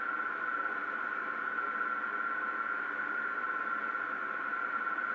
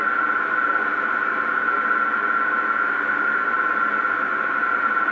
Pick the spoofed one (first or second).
first